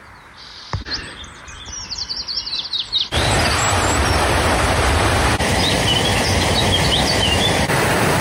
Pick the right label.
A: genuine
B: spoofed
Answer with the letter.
A